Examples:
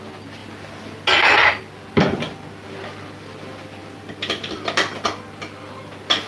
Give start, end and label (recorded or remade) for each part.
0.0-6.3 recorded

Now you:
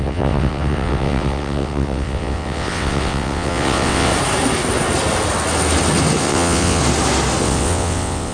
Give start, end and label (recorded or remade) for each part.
0.0-4.1 remade; 4.1-6.2 recorded; 6.2-6.8 remade; 6.8-7.4 recorded; 7.4-8.3 remade

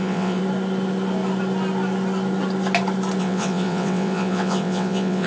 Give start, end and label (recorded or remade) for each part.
0.0-0.4 remade; 0.4-3.2 recorded; 3.2-5.3 remade

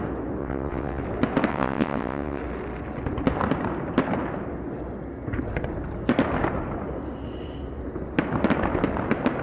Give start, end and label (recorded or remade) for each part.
0.0-0.4 recorded; 0.4-1.0 remade; 1.0-1.5 recorded; 1.5-2.4 remade; 2.4-9.4 recorded

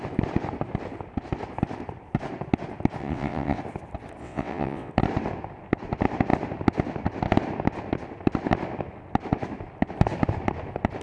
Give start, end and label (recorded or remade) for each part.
0.0-3.0 recorded; 3.0-3.6 remade; 3.6-4.2 recorded; 4.2-4.9 remade; 4.9-11.0 recorded